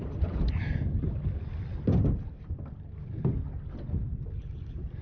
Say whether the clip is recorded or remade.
recorded